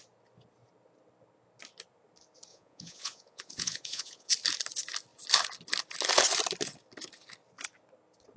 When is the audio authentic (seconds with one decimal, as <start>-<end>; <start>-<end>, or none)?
0.0-2.5; 4.3-8.4